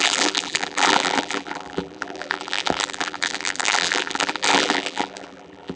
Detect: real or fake fake